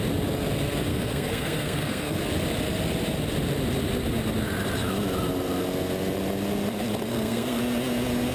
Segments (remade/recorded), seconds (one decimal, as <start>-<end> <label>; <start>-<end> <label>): 0.0-0.9 recorded; 0.9-2.2 remade; 2.2-7.1 recorded; 7.1-7.6 remade; 7.6-8.3 recorded